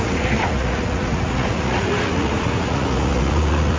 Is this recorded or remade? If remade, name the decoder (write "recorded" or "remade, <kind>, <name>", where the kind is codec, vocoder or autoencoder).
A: remade, vocoder, Vocos